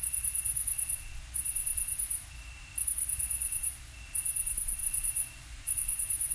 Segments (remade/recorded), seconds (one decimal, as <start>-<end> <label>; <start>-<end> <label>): 0.0-4.8 recorded; 4.8-6.3 remade